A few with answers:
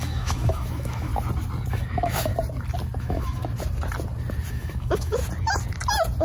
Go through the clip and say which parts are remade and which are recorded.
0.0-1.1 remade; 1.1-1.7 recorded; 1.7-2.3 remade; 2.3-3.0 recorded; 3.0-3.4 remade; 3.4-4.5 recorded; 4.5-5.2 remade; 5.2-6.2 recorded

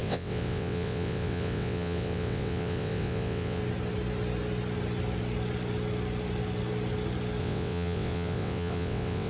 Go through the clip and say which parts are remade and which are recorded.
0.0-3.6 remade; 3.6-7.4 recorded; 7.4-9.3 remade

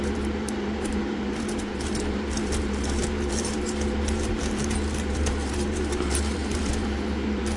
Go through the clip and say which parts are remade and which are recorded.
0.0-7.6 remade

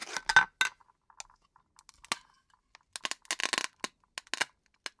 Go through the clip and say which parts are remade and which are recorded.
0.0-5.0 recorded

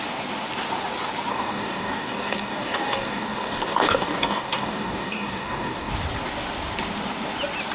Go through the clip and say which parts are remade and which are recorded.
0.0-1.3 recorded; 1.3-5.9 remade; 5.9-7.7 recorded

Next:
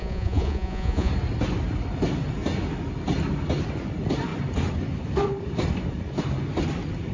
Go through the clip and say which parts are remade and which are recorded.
0.0-1.1 remade; 1.1-7.1 recorded

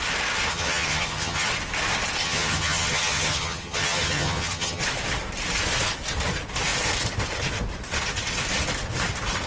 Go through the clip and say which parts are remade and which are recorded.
0.0-0.5 recorded; 0.5-1.5 remade; 1.5-2.2 recorded; 2.2-4.8 remade; 4.8-9.5 recorded